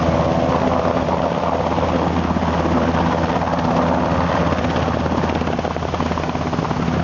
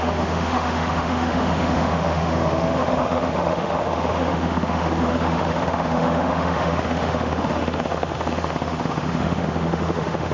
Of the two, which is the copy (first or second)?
second